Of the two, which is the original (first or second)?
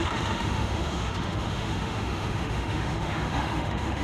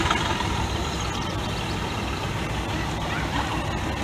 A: second